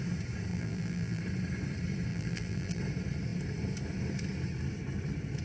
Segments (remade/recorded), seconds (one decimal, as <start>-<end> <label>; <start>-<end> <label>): 0.0-0.5 recorded; 0.5-1.2 remade; 1.2-2.1 recorded; 2.1-2.8 remade; 2.8-5.4 recorded